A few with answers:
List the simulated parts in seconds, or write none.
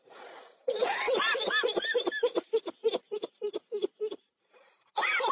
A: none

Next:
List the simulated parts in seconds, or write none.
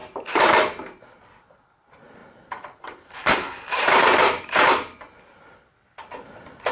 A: 0.0-1.0 (vocoder, BigVGAN v2); 2.2-4.7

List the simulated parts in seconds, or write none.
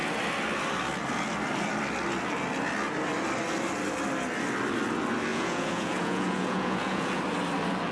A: 5.3-7.2 (vocoder, Vocos)